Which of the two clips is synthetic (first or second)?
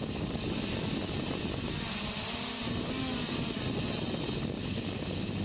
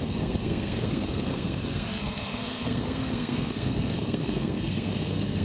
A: second